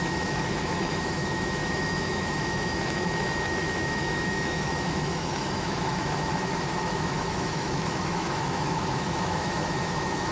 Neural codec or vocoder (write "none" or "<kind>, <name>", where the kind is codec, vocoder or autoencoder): autoencoder, DAC-VAE